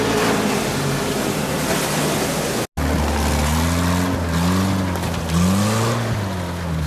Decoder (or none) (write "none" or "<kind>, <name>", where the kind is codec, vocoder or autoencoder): none